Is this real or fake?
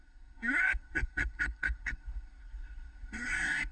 fake